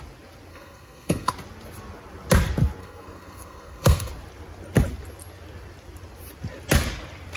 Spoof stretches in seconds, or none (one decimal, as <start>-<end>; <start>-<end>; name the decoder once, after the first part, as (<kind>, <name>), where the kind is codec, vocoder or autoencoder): 0.5-1.3 (codec, SNAC); 2.8-4.1